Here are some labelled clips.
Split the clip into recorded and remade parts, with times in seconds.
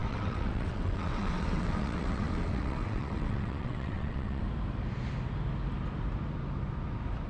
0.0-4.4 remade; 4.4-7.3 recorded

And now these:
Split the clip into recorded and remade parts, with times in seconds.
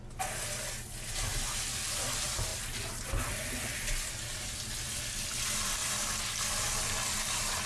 0.0-7.7 recorded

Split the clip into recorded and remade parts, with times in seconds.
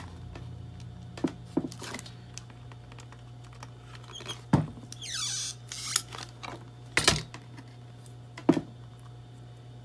0.0-9.8 recorded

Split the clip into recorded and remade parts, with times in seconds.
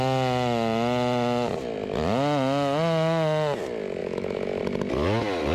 0.0-4.0 recorded; 4.0-4.6 remade; 4.6-5.5 recorded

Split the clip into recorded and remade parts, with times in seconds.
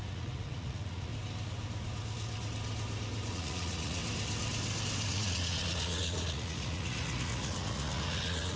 0.0-1.1 remade; 1.1-3.3 recorded; 3.3-4.0 remade; 4.0-5.1 recorded; 5.1-8.6 remade